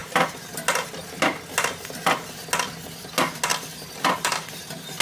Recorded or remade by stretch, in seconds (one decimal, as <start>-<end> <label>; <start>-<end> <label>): 0.0-3.5 recorded; 3.5-4.6 remade; 4.6-5.0 recorded